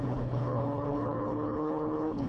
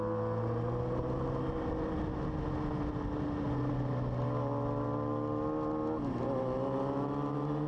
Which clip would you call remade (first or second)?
first